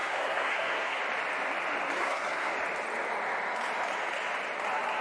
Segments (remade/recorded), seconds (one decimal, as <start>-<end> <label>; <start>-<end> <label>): 0.0-1.0 remade; 1.0-2.0 recorded; 2.0-2.5 remade; 2.5-5.0 recorded